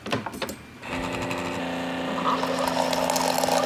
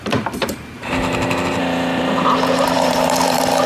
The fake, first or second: second